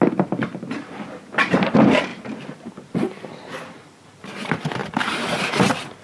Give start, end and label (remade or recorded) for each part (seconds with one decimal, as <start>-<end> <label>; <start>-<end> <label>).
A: 0.0-0.4 recorded; 0.4-1.7 remade; 1.7-2.1 recorded; 2.1-4.2 remade; 4.2-6.0 recorded